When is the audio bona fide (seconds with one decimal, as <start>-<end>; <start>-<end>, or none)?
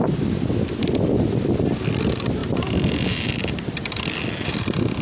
none